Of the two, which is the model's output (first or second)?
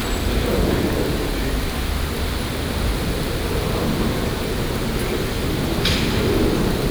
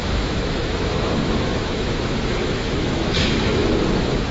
second